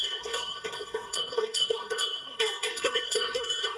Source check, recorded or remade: remade